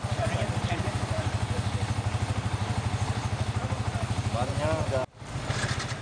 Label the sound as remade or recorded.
recorded